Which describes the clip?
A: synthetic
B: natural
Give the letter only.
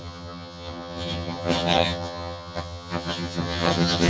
A